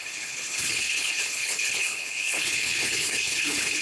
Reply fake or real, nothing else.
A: fake